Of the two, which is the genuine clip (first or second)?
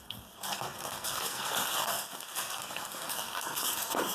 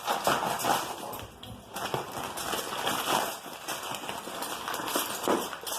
second